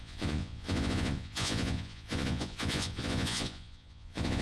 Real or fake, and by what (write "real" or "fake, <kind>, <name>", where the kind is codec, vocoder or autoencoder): fake, vocoder, Vocos